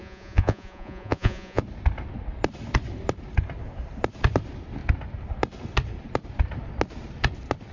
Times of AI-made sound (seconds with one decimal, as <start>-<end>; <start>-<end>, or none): 0.0-1.6